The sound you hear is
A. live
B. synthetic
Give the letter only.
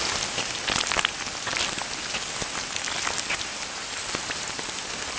A